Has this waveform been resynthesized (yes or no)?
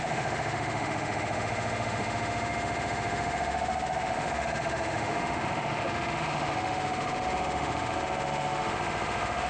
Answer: yes